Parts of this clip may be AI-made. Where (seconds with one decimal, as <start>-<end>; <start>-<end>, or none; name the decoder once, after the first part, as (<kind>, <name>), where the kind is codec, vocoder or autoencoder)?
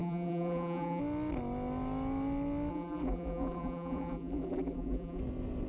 0.0-1.0 (vocoder, BigVGAN v2); 2.7-5.2